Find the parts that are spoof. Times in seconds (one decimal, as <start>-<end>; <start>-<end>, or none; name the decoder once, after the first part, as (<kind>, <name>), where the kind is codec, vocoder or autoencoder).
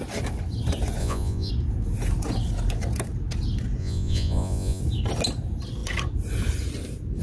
1.0-1.5 (vocoder, Vocos); 3.8-4.8